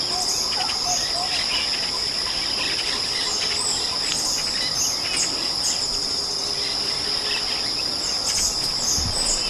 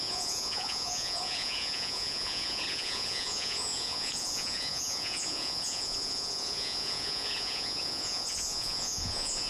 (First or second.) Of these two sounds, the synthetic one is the second